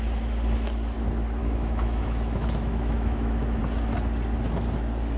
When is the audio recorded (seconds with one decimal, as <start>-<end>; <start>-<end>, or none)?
0.0-1.4; 3.6-5.2